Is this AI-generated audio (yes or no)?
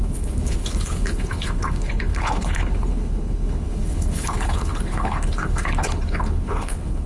yes